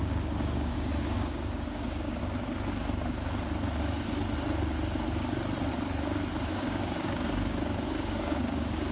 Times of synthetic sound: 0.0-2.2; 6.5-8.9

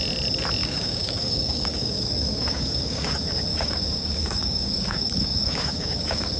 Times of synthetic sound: 0.6-3.1; 3.5-6.4

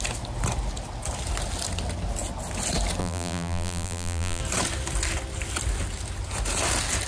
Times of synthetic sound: 3.0-4.4

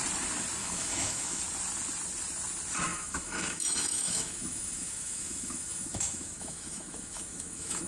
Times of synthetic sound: 0.6-1.4; 2.9-7.9

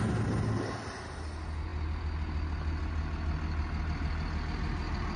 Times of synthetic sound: none

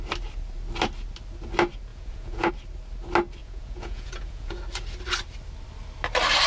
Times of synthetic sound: 1.9-2.5; 3.4-4.6